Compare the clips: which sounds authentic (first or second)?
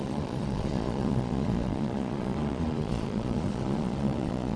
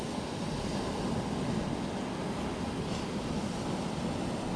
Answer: second